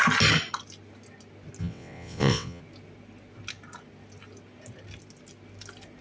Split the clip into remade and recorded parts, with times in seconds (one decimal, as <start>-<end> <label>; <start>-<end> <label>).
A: 0.0-1.6 recorded; 1.6-2.6 remade; 2.6-6.0 recorded